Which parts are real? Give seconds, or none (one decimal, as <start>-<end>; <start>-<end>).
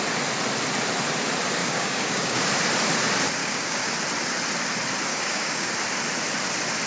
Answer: 0.0-1.6; 2.4-3.4; 3.9-5.1; 5.7-6.9